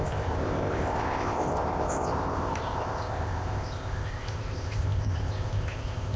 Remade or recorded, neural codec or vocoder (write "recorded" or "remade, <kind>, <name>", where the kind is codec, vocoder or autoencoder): remade, codec, ZipCodec